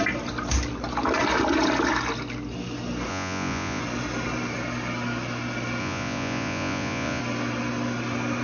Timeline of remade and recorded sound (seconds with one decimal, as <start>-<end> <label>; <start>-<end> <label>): 0.0-3.1 recorded; 3.1-3.8 remade; 3.8-5.8 recorded; 5.8-7.2 remade; 7.2-8.4 recorded